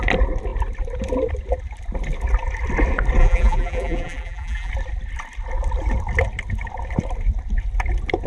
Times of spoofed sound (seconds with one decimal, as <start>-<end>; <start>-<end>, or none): 3.2-4.7